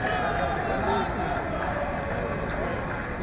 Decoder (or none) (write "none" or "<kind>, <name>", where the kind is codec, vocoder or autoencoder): none